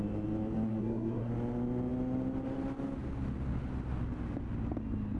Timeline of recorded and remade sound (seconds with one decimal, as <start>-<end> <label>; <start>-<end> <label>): 0.0-0.7 recorded; 0.7-1.3 remade; 1.3-5.2 recorded